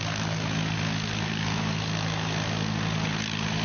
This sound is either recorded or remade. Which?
recorded